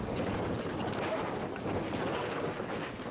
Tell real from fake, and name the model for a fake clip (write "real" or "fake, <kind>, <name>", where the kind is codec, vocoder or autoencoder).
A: real